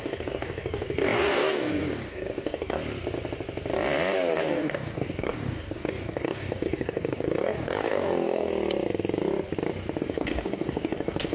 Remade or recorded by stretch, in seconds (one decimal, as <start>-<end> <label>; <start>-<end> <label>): 0.0-2.8 remade; 2.8-4.4 recorded; 4.4-8.5 remade; 8.5-10.0 recorded; 10.0-11.3 remade